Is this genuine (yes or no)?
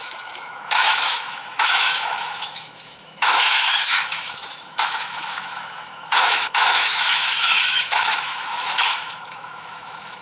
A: no